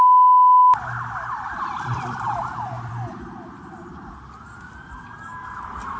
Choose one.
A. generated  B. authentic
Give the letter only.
B